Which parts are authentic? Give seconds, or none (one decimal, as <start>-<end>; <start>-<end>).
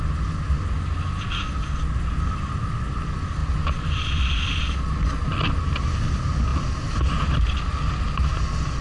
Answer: 0.0-8.8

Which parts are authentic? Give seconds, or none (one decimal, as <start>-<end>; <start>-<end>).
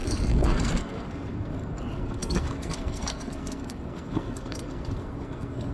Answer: none